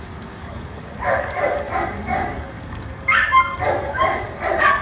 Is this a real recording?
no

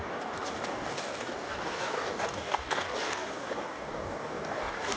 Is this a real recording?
no